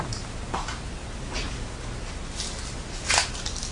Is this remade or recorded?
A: recorded